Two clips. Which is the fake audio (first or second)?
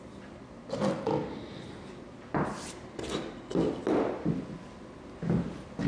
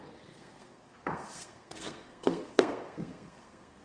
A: second